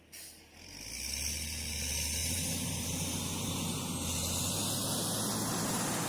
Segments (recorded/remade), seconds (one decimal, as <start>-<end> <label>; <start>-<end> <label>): 0.0-2.2 recorded; 2.2-3.5 remade; 3.5-6.1 recorded